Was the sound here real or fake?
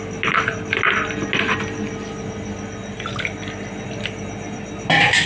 real